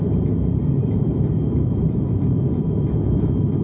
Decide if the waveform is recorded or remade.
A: remade